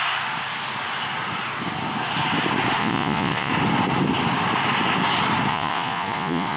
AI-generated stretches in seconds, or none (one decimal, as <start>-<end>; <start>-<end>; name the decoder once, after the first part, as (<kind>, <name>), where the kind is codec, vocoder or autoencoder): 2.8-3.5 (vocoder, Vocos); 5.5-6.6